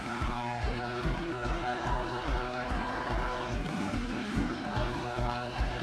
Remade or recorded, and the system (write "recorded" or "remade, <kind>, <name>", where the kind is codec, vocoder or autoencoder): remade, codec, SNAC